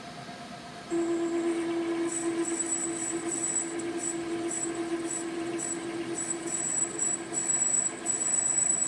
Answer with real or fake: real